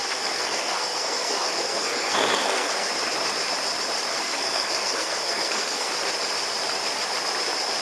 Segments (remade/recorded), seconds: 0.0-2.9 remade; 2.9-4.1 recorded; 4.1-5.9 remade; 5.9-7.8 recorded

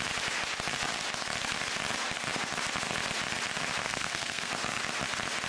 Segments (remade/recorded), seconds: 0.0-3.8 recorded; 3.8-4.5 remade; 4.5-5.5 recorded

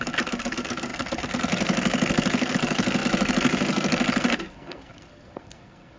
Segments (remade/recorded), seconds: 0.0-6.0 remade

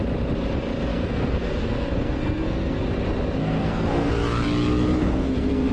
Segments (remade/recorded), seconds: 0.0-0.9 recorded; 0.9-2.8 remade; 2.8-3.4 recorded; 3.4-4.1 remade; 4.1-5.0 recorded; 5.0-5.7 remade

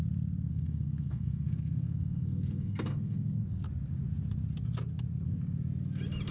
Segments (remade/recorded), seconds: 0.0-0.5 recorded; 0.5-3.5 remade; 3.5-6.3 recorded

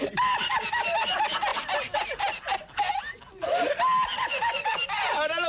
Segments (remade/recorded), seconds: 0.0-5.5 recorded